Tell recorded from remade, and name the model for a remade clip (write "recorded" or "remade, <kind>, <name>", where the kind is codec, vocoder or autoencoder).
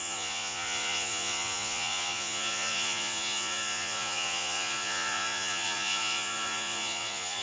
remade, vocoder, Vocos